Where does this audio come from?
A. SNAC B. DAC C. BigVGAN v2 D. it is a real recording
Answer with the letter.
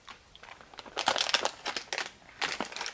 D